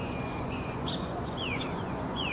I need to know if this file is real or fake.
fake